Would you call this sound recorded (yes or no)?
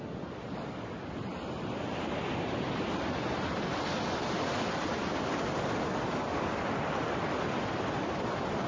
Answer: yes